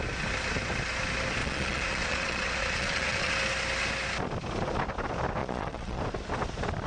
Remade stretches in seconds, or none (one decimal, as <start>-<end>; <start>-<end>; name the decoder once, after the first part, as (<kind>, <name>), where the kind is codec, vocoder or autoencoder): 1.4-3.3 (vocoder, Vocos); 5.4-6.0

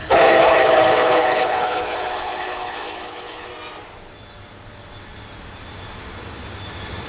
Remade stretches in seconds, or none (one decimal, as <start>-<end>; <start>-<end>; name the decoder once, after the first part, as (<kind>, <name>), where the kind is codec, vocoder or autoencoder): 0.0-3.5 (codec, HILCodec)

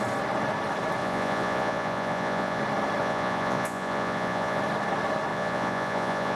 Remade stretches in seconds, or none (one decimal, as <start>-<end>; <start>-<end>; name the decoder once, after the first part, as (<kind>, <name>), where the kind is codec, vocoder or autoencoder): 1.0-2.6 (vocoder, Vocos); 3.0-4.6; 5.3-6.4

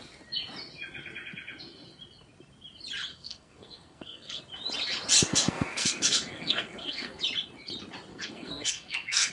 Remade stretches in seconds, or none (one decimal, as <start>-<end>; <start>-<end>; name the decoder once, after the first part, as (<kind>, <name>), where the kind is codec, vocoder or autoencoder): 3.1-4.4 (codec, SNAC); 5.3-7.2; 8.1-9.3

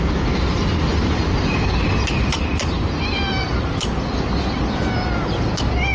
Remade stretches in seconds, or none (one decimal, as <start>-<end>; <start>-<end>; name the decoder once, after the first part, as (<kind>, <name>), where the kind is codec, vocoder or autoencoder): 0.9-1.7 (vocoder, BigVGAN v2)

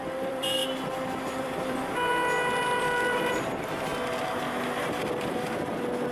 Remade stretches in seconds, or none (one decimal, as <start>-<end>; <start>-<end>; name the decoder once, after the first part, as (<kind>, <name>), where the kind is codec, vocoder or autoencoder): 0.0-0.6 (vocoder, BigVGAN v2); 1.4-2.1; 2.8-3.9; 5.0-6.1

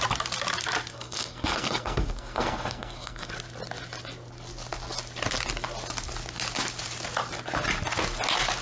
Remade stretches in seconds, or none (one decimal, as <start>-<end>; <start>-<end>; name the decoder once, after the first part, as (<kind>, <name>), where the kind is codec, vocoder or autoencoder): 0.9-3.3 (codec, SNAC)

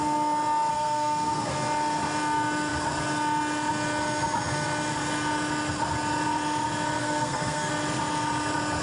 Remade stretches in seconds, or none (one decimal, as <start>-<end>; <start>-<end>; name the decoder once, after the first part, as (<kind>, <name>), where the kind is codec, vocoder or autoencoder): 0.7-1.5 (codec, SNAC); 7.0-7.7